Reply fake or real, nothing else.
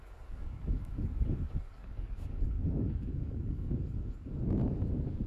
fake